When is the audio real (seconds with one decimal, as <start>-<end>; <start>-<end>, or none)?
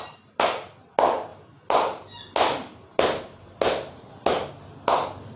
0.0-5.4